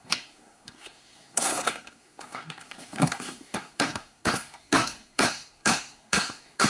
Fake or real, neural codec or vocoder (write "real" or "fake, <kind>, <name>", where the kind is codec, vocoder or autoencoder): fake, codec, SNAC